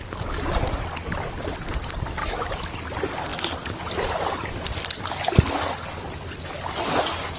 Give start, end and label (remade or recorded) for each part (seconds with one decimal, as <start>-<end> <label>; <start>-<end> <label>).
0.0-2.2 recorded; 2.2-2.7 remade; 2.7-7.4 recorded